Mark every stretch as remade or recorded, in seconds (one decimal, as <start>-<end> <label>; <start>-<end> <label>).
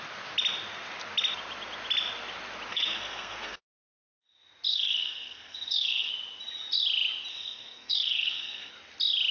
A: 0.0-2.7 recorded; 2.7-3.6 remade; 3.6-4.7 recorded; 4.7-6.1 remade; 6.1-7.3 recorded; 7.3-8.7 remade; 8.7-9.3 recorded